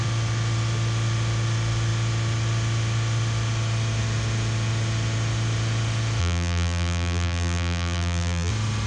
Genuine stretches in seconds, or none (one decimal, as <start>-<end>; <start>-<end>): 0.0-6.2; 8.5-8.9